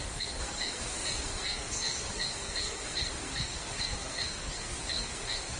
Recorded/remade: remade